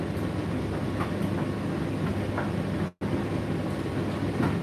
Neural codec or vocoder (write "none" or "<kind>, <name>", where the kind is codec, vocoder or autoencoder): none